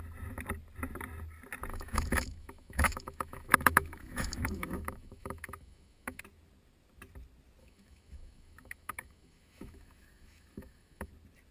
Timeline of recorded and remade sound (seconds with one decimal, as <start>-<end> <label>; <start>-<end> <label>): 0.0-1.7 recorded; 1.7-6.2 remade; 6.2-7.6 recorded; 7.6-11.1 remade; 11.1-11.5 recorded